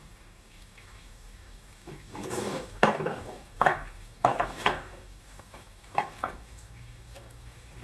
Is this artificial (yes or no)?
yes